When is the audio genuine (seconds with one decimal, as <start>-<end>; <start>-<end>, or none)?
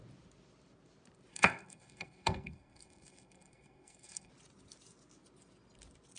0.0-1.3; 4.3-6.2